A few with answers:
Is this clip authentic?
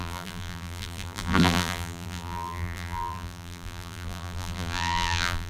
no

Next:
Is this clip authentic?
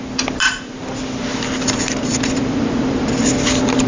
yes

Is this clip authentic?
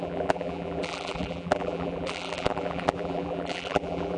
no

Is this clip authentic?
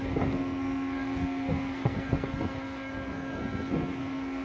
no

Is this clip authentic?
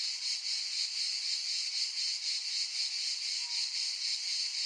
yes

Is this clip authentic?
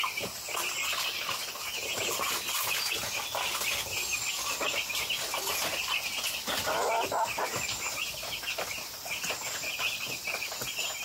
yes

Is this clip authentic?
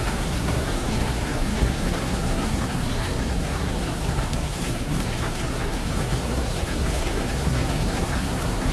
no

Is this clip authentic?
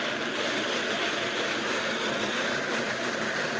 yes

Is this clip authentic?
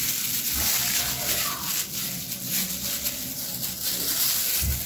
yes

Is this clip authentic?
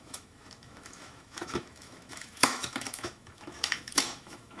no